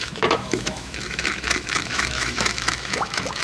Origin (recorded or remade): remade